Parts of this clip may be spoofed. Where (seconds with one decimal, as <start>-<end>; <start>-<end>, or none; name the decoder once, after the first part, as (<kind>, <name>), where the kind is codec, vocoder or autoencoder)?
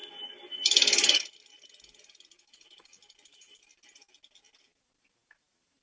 none